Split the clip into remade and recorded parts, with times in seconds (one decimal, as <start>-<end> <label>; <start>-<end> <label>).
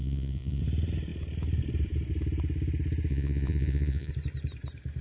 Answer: 0.0-0.6 remade; 0.6-3.1 recorded; 3.1-4.1 remade; 4.1-5.0 recorded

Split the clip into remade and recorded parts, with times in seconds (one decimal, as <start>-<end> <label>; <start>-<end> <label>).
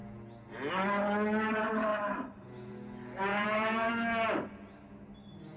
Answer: 0.0-3.3 recorded; 3.3-3.9 remade; 3.9-5.6 recorded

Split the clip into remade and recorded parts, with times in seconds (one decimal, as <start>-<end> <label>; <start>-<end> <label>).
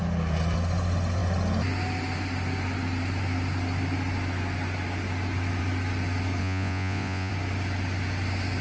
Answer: 0.0-6.4 recorded; 6.4-7.3 remade; 7.3-8.6 recorded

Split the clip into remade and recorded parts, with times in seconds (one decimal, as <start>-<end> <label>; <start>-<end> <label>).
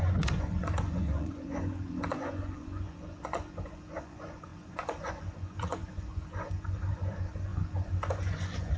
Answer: 0.0-8.8 remade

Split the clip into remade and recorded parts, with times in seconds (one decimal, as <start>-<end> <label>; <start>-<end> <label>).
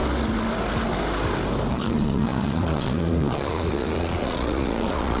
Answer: 0.0-1.7 recorded; 1.7-5.2 remade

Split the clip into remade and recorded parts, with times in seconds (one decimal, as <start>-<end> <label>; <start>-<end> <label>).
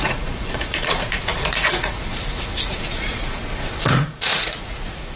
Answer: 0.0-5.2 remade